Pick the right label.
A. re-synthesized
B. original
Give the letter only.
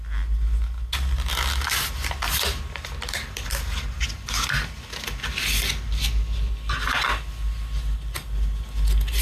B